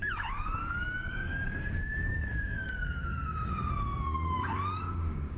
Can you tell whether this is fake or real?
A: fake